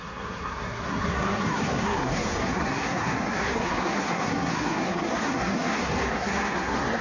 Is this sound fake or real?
fake